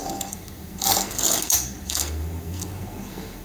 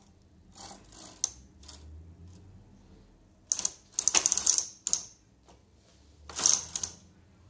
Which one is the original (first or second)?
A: second